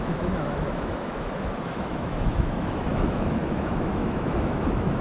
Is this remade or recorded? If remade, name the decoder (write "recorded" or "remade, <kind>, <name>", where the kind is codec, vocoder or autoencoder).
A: remade, autoencoder, DAC-VAE